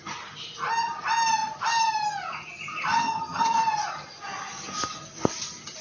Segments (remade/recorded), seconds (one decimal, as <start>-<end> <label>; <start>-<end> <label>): 0.0-2.9 recorded; 2.9-3.6 remade; 3.6-5.8 recorded